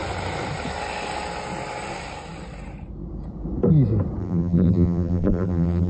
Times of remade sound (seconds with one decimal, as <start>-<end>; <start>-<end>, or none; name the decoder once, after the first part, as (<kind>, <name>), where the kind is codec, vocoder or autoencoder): 4.2-5.9 (vocoder, BigVGAN v2)